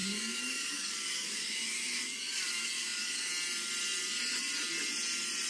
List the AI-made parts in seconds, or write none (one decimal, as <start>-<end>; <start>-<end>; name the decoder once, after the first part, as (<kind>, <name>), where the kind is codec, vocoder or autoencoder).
0.0-3.3 (codec, DAC)